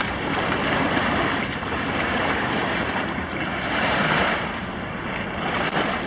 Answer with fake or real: fake